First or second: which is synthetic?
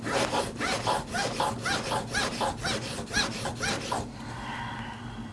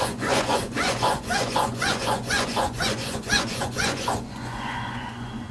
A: second